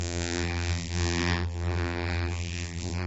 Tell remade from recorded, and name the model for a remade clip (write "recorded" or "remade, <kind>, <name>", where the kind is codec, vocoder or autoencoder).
remade, vocoder, BigVGAN v2